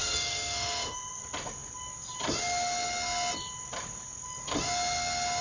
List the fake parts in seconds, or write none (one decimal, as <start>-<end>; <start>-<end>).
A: 0.0-1.2

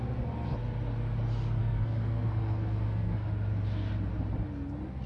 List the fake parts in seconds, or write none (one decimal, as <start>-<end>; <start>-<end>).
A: 1.6-3.3

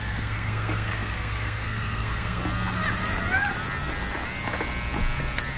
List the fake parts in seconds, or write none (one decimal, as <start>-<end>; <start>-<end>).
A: 0.0-2.4